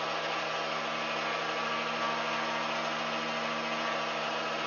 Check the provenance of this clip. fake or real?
real